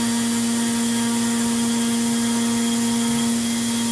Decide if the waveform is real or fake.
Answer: real